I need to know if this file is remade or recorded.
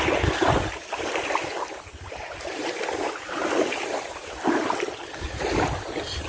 recorded